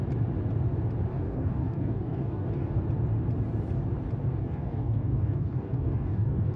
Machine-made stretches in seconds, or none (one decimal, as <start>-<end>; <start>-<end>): 1.1-2.8; 4.4-6.6